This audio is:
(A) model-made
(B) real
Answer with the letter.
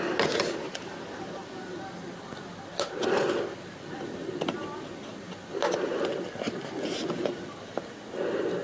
B